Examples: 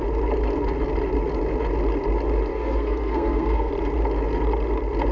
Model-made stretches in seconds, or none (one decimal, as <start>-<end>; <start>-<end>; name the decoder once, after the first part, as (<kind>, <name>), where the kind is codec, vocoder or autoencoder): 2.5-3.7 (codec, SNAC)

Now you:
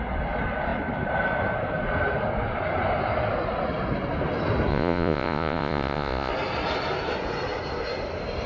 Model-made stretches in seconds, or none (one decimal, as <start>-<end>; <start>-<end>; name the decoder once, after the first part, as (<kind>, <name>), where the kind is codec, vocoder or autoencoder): 4.7-6.3 (vocoder, Vocos)

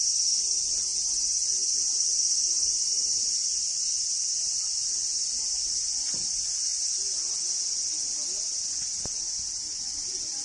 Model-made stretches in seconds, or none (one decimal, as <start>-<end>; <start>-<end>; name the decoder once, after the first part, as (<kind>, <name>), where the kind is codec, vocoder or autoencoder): none